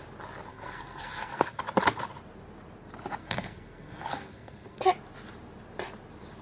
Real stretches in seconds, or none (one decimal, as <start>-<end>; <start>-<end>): 0.0-0.5; 1.6-3.2; 4.8-6.4